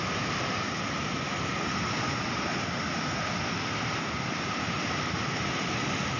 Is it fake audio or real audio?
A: real